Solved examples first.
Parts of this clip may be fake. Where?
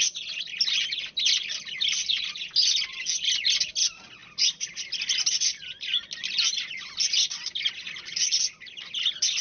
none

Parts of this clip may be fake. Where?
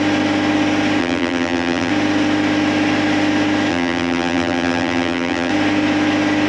1.0-1.9 (vocoder, BigVGAN v2); 3.7-5.5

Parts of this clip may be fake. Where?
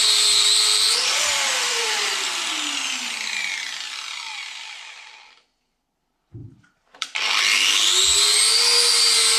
1.0-2.1 (vocoder, BigVGAN v2); 6.4-7.4